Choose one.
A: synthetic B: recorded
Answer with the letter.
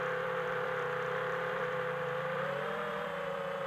A